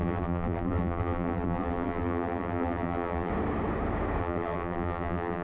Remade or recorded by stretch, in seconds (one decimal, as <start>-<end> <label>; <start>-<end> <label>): 0.0-3.3 remade; 3.3-4.2 recorded; 4.2-5.4 remade